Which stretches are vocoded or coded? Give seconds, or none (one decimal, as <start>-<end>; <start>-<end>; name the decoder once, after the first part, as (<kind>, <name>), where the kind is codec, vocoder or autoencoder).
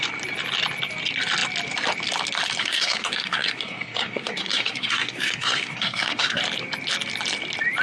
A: 2.6-6.4 (codec, SNAC)